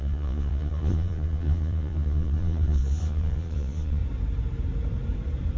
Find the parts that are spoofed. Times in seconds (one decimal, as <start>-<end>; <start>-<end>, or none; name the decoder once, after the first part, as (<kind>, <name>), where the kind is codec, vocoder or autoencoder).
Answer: 0.0-4.0 (vocoder, Vocos)